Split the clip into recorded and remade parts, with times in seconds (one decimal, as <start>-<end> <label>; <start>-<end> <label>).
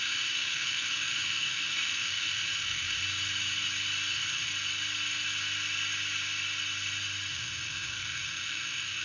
0.0-3.0 remade; 3.0-4.1 recorded; 4.1-4.5 remade; 4.5-7.3 recorded; 7.3-9.0 remade